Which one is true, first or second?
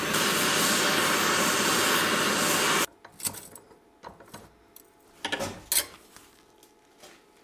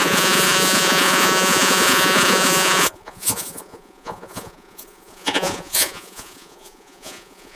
first